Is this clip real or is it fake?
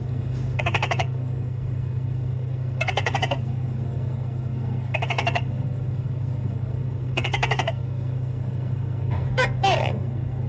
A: fake